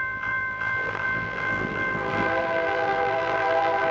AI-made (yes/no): yes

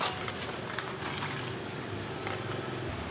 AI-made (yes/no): no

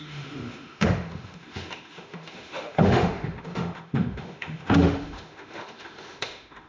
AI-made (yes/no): yes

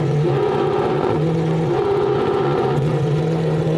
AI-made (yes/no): yes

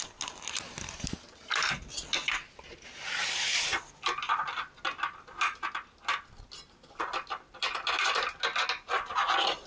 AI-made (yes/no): no